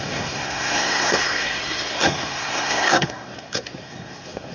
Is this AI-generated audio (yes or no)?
yes